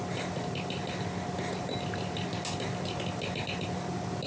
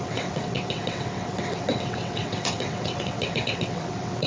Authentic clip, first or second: first